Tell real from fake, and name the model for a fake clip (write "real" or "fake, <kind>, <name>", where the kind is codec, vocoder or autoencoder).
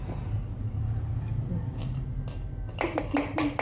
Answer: real